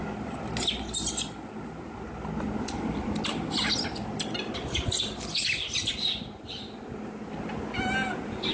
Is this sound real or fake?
real